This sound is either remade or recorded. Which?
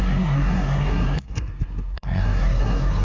remade